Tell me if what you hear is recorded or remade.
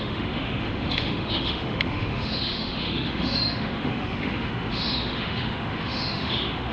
remade